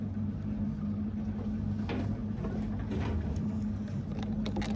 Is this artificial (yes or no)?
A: no